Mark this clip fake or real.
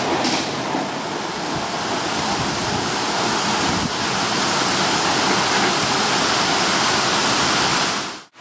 real